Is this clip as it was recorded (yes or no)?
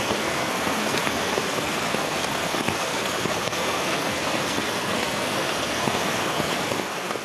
no